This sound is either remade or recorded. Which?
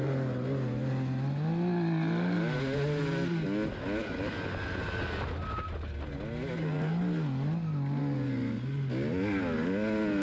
recorded